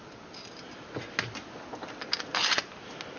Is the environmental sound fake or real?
real